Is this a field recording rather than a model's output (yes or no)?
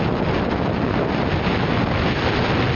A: yes